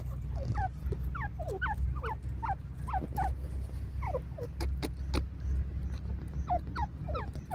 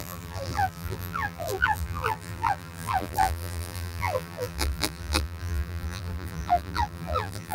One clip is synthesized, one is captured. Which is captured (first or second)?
first